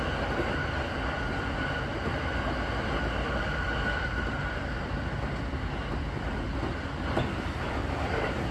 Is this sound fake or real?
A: real